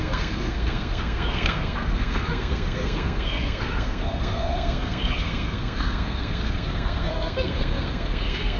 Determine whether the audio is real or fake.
fake